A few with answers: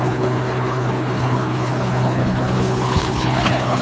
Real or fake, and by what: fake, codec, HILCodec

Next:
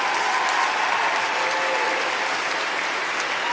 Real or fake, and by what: real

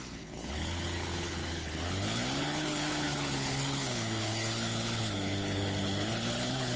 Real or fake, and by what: fake, codec, HILCodec